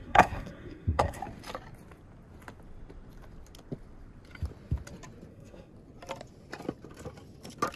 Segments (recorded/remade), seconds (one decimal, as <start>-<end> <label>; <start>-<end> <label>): 0.0-1.2 remade; 1.2-5.3 recorded; 5.3-5.7 remade; 5.7-7.8 recorded